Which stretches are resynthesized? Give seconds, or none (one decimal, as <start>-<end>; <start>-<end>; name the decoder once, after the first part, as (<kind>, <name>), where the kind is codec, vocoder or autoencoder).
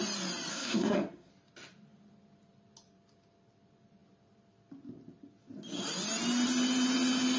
0.5-1.3 (codec, SNAC)